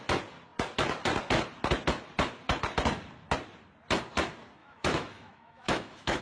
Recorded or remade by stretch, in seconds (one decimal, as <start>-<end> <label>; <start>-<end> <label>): 0.0-4.6 recorded; 4.6-6.2 remade